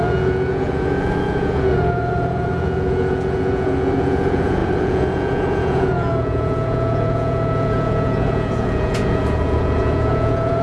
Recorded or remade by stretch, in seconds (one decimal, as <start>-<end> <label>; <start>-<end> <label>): 0.0-10.6 remade